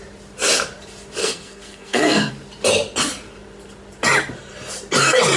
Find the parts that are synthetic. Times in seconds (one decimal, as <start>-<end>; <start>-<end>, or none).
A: 1.2-2.3